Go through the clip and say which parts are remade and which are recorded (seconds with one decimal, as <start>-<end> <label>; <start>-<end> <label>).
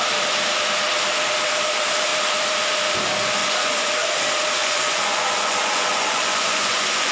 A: 0.0-3.4 recorded; 3.4-3.9 remade; 3.9-4.6 recorded; 4.6-7.1 remade